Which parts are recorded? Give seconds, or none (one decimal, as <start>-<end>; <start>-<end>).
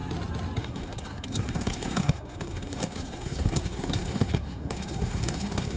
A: 0.0-0.6